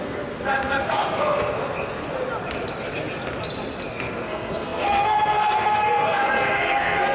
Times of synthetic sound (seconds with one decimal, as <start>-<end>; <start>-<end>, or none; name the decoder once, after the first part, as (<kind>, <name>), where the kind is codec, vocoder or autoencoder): 0.0-2.1 (codec, SNAC); 3.9-7.1